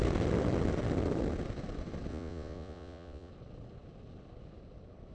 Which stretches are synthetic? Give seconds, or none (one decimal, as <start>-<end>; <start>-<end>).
2.1-3.3